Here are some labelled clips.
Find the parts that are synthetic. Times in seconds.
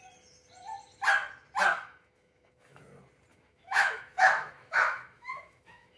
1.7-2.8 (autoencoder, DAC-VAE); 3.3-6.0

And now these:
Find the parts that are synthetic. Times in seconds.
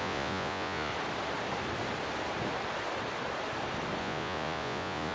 0.0-0.9 (vocoder, Vocos); 4.0-5.1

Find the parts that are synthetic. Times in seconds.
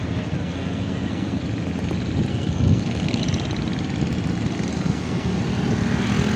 0.0-1.4 (codec, SNAC); 2.3-3.2; 4.7-5.4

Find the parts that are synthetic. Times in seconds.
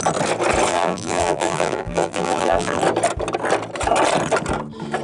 0.7-2.8 (vocoder, BigVGAN v2)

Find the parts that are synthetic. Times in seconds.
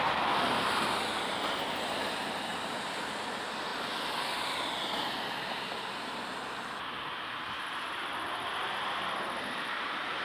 0.0-3.7 (vocoder, BigVGAN v2); 4.2-10.2